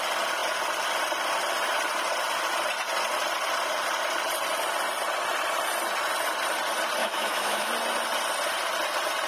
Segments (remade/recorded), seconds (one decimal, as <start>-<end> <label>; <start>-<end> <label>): 0.0-7.0 recorded; 7.0-7.7 remade; 7.7-9.3 recorded